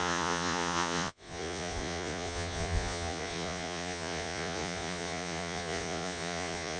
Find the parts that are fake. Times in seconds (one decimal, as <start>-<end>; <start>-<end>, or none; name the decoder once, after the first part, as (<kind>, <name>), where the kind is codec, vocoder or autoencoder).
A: 0.0-6.8 (vocoder, Vocos)